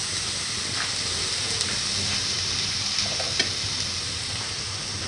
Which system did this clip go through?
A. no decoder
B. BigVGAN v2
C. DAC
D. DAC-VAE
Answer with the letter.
A